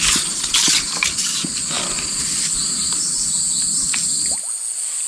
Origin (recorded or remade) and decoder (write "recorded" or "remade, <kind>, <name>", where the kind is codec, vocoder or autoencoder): recorded